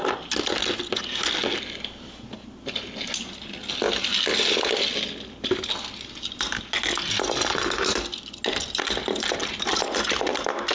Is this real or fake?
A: real